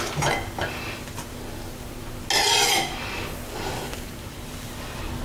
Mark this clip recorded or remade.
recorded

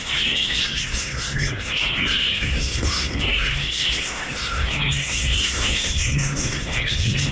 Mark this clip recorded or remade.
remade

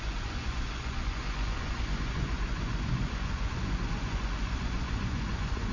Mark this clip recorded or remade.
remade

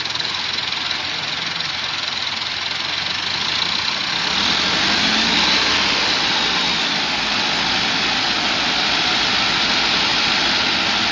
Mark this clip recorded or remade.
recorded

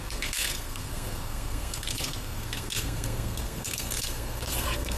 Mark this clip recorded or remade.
remade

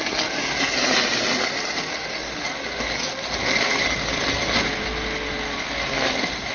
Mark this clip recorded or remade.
recorded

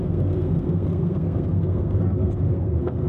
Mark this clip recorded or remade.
remade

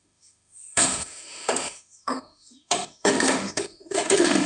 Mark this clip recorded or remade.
remade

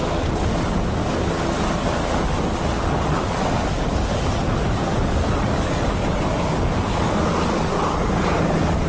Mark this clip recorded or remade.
recorded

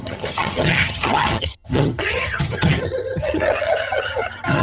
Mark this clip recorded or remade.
remade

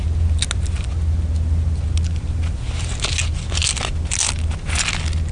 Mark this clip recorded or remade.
recorded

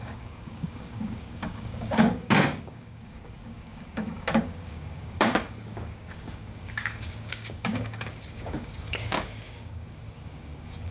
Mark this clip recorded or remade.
remade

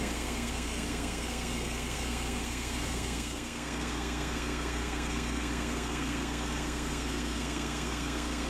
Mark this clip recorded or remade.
remade